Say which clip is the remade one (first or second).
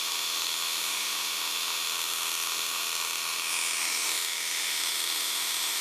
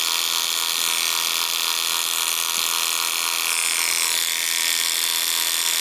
first